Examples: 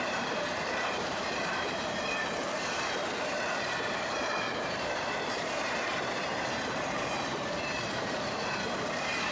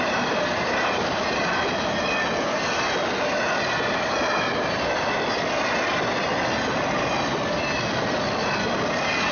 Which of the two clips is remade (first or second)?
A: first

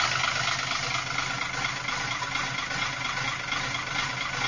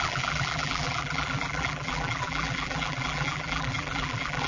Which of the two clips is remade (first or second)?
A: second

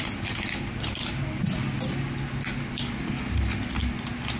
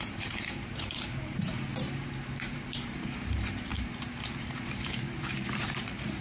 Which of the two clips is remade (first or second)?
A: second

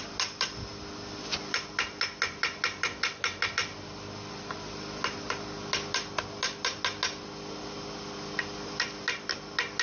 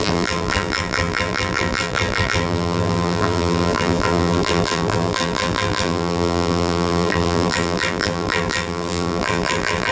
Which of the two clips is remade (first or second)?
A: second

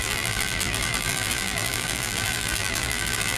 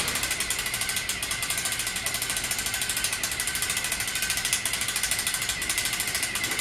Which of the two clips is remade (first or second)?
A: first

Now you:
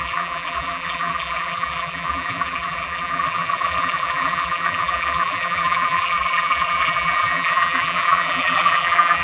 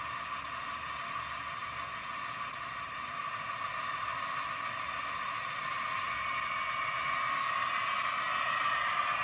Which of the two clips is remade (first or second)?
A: first